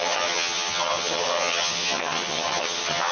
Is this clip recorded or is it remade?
remade